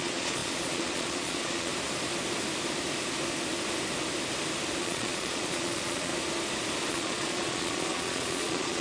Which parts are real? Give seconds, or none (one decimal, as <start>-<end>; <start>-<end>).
1.7-4.8; 6.1-6.9